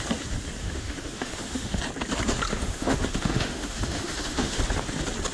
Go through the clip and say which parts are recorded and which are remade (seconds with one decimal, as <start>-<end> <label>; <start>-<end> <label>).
0.0-0.6 recorded; 0.6-1.8 remade; 1.8-2.5 recorded; 2.5-4.6 remade; 4.6-5.3 recorded